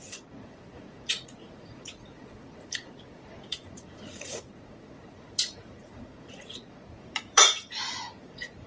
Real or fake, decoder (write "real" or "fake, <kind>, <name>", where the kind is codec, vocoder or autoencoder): fake, vocoder, Vocos